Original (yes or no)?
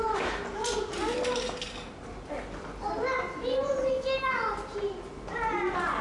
yes